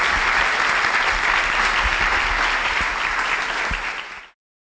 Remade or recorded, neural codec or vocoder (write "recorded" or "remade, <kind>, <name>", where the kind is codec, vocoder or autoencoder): recorded